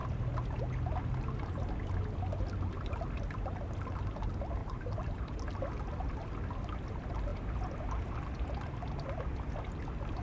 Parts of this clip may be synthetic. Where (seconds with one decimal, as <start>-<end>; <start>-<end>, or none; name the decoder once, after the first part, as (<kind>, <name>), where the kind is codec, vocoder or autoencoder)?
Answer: 4.6-5.4 (vocoder, BigVGAN v2)